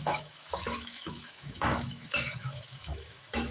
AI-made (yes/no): yes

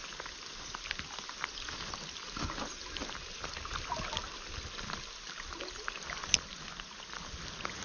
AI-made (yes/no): no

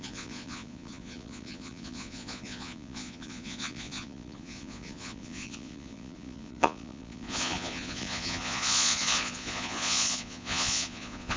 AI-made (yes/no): yes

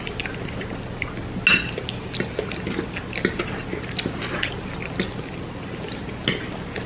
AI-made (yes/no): no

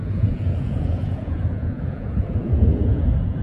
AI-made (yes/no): yes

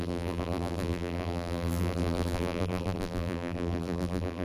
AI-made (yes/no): yes